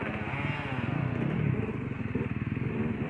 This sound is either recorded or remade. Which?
recorded